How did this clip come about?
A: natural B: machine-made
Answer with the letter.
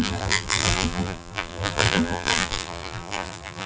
B